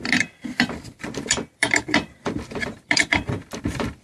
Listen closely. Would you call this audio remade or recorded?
remade